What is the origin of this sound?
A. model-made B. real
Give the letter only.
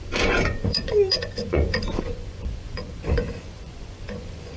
A